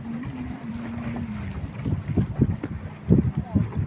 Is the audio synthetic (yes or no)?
no